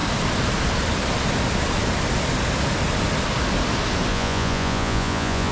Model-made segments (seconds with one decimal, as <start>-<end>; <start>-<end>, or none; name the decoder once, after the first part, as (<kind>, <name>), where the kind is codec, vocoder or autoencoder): 4.1-5.5 (vocoder, Vocos)